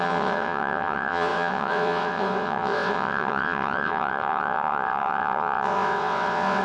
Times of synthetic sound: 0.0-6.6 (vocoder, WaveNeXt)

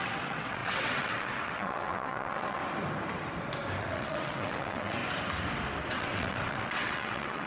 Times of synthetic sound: 0.0-2.6 (vocoder, WaveNeXt); 3.8-5.0; 5.9-7.5

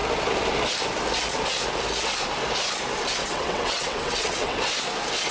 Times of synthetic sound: 3.2-4.6 (vocoder, WaveNeXt)

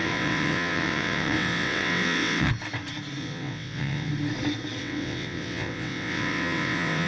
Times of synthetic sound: 0.0-2.5 (vocoder, WaveNeXt); 3.2-4.1; 4.8-7.1

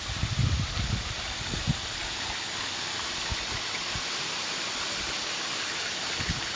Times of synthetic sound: none

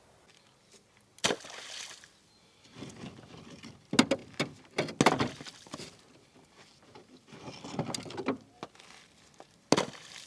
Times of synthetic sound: none

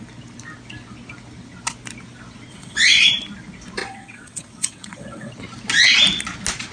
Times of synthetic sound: 2.5-3.1 (vocoder, WaveNeXt); 3.8-5.3